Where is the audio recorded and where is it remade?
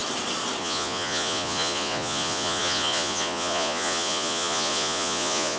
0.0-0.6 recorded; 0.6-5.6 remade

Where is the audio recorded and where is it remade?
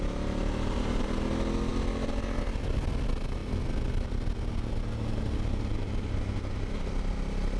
0.0-7.6 recorded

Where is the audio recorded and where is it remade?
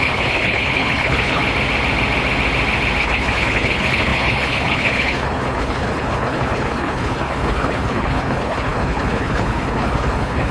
0.0-1.4 remade; 1.4-3.0 recorded; 3.0-10.5 remade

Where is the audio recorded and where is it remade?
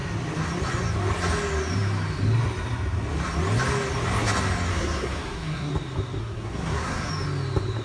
0.0-4.7 recorded; 4.7-5.7 remade; 5.7-6.2 recorded; 6.2-7.1 remade; 7.1-7.8 recorded